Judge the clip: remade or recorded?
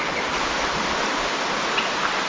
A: recorded